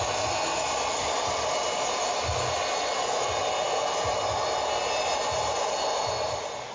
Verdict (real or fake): real